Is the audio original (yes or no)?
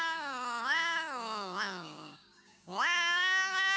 no